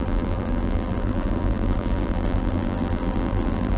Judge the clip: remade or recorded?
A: remade